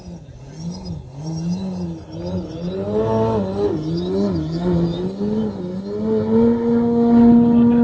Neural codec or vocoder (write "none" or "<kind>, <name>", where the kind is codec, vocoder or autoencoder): none